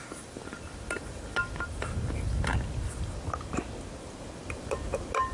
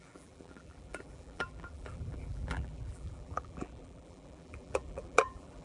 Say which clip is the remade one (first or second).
second